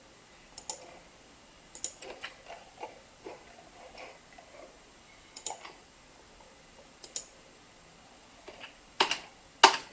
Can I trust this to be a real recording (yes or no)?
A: yes